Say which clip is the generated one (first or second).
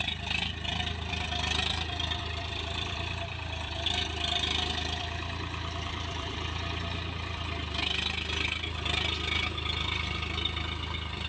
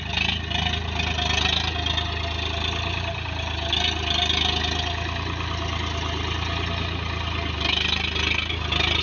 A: first